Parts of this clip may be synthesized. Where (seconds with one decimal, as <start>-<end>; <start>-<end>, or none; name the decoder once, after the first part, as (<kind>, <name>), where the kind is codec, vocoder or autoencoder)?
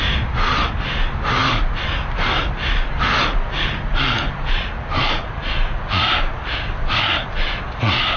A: none